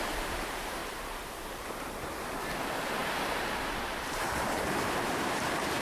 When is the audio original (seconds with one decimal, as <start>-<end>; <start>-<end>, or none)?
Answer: 0.0-0.8; 1.3-3.0